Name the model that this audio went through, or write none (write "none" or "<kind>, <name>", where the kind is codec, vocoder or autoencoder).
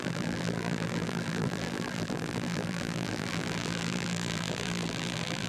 vocoder, BigVGAN v2